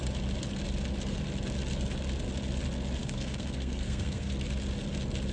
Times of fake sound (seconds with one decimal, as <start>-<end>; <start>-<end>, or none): 3.0-4.3

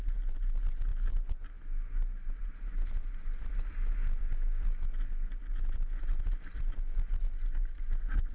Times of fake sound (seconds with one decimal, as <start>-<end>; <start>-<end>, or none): none